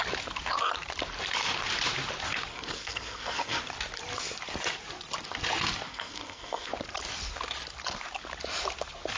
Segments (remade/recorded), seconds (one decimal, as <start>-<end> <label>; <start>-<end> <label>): 0.0-2.5 recorded; 2.5-3.6 remade; 3.6-5.9 recorded; 5.9-6.7 remade; 6.7-9.2 recorded